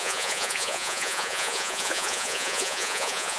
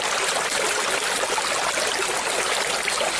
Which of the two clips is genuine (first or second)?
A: second